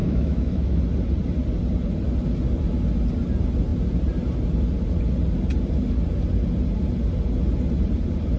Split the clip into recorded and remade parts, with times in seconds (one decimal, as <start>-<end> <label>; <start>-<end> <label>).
0.0-0.8 remade; 0.8-8.4 recorded